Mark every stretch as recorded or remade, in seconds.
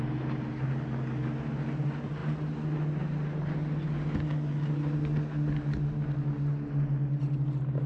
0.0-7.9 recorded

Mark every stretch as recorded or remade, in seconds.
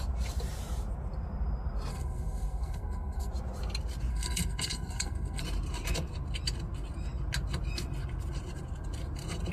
0.0-1.9 recorded; 1.9-3.3 remade; 3.3-4.1 recorded; 4.1-5.4 remade; 5.4-9.5 recorded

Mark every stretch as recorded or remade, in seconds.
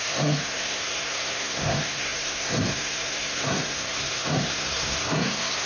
0.0-5.7 remade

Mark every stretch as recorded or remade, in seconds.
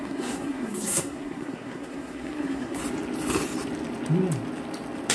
0.0-2.8 remade; 2.8-5.1 recorded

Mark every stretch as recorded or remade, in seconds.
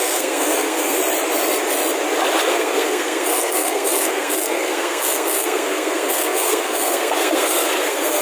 0.0-1.0 remade; 1.0-2.5 recorded; 2.5-8.2 remade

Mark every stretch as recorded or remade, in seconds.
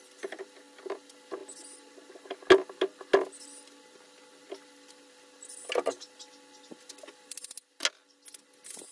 0.0-8.9 recorded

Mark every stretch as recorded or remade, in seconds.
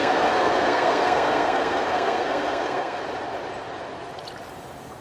0.0-3.0 remade; 3.0-5.0 recorded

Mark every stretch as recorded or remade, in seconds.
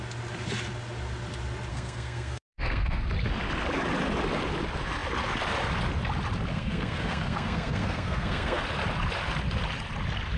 0.0-1.7 recorded; 1.7-3.0 remade; 3.0-6.5 recorded; 6.5-8.6 remade; 8.6-10.4 recorded